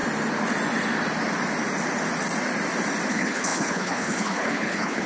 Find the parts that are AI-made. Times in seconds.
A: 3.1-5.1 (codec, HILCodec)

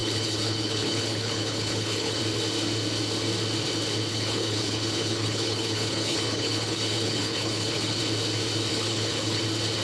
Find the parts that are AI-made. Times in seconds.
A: 0.0-2.2 (codec, HILCodec); 4.1-8.0; 8.7-9.4

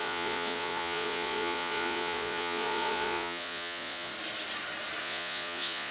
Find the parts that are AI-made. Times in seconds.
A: 0.0-4.1 (vocoder, Vocos); 5.0-5.9

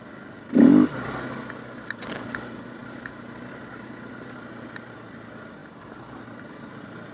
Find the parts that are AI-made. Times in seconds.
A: none

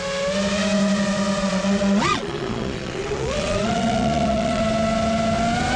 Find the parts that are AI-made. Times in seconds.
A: 1.4-4.6 (vocoder, Vocos)

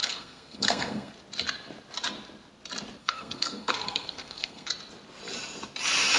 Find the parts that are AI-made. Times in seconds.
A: 0.0-1.1 (codec, SNAC); 3.0-4.7